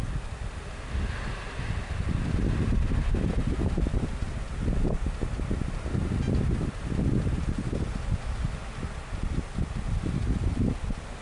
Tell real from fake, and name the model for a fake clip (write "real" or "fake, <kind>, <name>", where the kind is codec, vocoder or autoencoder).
real